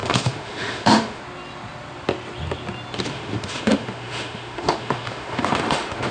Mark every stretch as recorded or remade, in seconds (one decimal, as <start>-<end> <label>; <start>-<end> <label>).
0.0-1.2 remade; 1.2-3.1 recorded; 3.1-6.1 remade